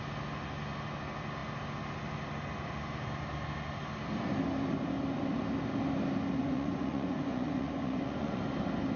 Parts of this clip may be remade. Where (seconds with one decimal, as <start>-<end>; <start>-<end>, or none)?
6.4-8.4